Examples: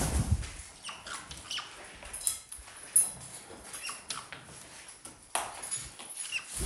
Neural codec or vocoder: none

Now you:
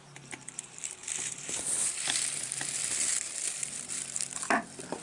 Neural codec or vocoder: vocoder, BigVGAN v2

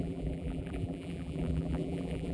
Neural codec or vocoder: vocoder, BigVGAN v2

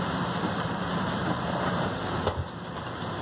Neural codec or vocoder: vocoder, BigVGAN v2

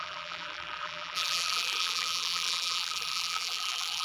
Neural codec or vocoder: vocoder, BigVGAN v2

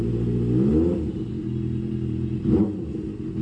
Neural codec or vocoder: none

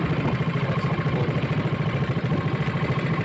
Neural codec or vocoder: none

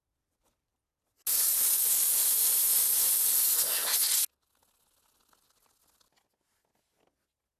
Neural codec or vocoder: none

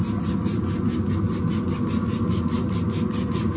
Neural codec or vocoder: none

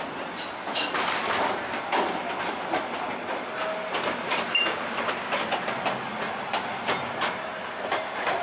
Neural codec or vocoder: none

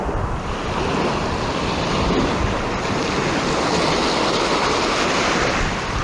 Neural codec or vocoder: none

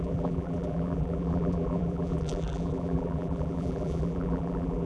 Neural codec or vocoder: vocoder, BigVGAN v2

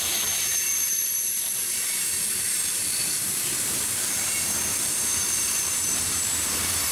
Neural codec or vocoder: vocoder, BigVGAN v2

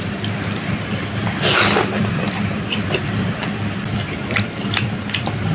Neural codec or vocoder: vocoder, BigVGAN v2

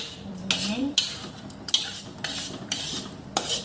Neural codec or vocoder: vocoder, BigVGAN v2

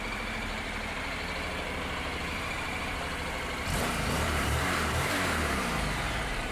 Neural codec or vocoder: vocoder, BigVGAN v2